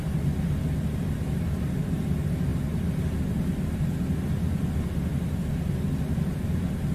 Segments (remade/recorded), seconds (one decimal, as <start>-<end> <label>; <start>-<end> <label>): 0.0-6.9 recorded